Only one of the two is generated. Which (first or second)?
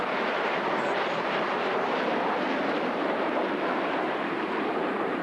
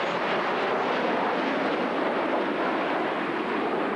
first